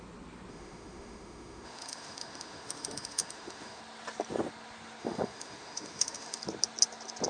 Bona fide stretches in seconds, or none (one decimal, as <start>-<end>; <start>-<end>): 0.0-0.5; 3.8-5.0; 6.4-7.3